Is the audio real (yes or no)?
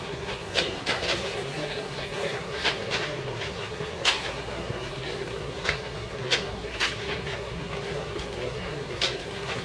no